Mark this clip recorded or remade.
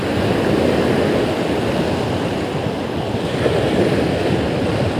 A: recorded